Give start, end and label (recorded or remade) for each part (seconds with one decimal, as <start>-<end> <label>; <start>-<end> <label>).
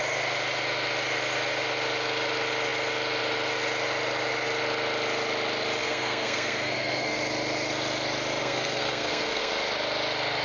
0.0-5.8 recorded; 5.8-7.2 remade; 7.2-8.4 recorded; 8.4-9.5 remade; 9.5-10.4 recorded